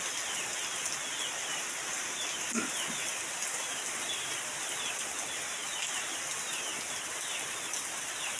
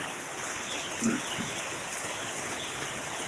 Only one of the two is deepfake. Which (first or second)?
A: second